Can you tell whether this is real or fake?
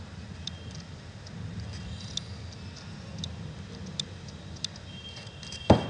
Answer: fake